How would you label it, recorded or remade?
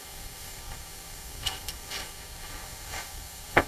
remade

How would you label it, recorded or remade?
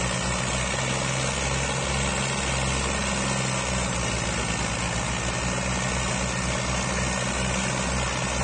recorded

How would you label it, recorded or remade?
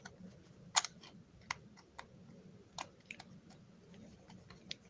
recorded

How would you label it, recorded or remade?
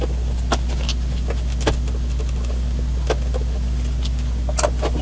recorded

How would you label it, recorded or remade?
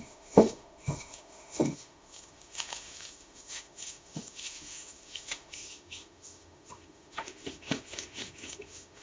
remade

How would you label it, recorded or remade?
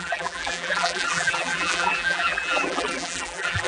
remade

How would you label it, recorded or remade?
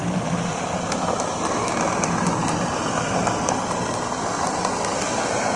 recorded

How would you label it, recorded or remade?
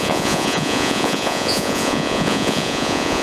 remade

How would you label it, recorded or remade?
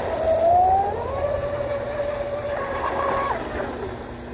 recorded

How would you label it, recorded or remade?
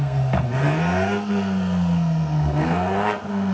remade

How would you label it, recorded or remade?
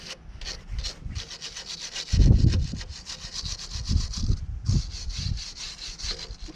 recorded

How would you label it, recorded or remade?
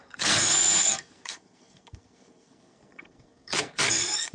remade